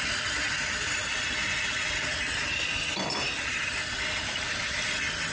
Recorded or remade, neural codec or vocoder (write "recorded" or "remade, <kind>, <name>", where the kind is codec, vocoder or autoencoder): recorded